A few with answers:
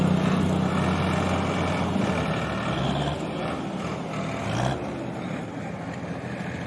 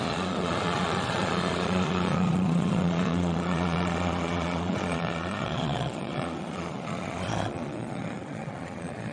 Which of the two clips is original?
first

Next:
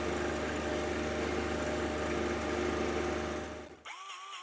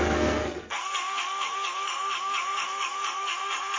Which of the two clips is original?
first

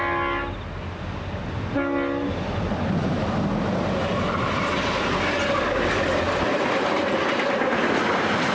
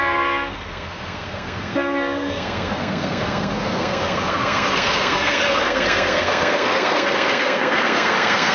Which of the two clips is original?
first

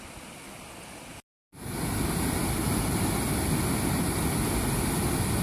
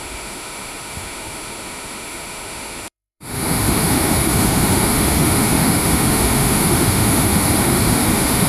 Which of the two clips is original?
first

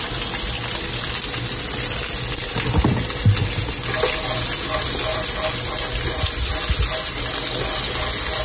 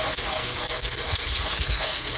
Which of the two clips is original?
first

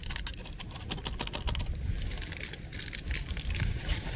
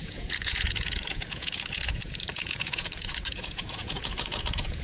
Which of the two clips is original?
first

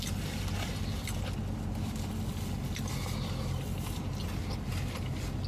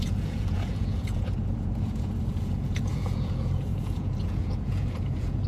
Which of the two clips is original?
first